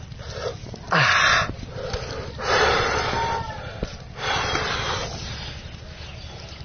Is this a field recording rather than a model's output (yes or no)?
yes